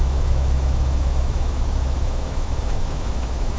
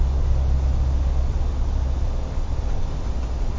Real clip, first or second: second